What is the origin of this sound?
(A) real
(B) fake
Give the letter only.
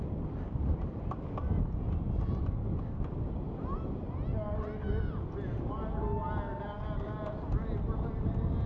A